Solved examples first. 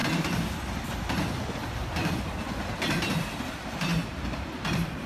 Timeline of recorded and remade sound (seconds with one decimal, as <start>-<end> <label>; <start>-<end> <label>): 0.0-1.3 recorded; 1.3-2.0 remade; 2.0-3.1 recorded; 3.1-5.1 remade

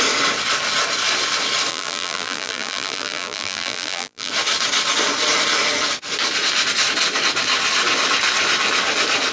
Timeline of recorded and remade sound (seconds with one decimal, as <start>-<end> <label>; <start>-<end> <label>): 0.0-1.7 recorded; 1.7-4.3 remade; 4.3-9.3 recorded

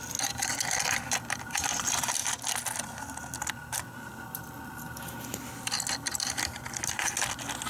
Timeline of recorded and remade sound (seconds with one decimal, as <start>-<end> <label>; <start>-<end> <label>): 0.0-7.7 recorded